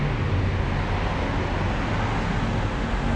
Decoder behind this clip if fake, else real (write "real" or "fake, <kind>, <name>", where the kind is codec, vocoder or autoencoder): real